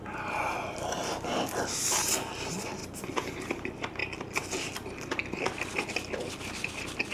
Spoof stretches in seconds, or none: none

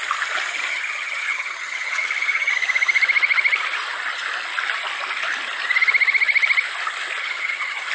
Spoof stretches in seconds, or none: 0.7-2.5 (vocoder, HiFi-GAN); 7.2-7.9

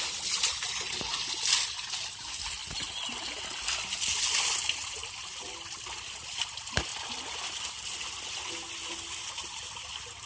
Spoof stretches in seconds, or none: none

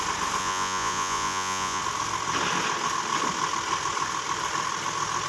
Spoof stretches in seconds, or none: 0.4-1.8 (vocoder, Vocos)